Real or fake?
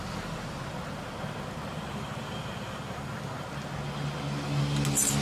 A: real